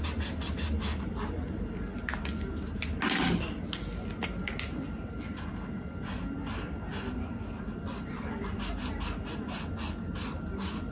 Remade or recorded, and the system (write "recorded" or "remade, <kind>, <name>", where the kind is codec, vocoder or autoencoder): recorded